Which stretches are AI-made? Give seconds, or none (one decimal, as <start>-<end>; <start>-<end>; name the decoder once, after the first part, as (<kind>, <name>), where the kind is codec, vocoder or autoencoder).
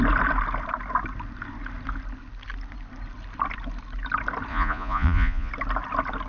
4.5-5.5 (vocoder, Vocos)